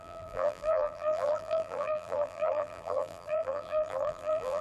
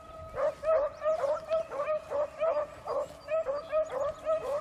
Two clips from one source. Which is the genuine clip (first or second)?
second